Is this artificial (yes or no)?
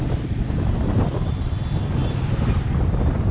no